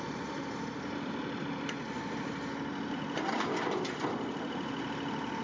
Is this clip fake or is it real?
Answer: real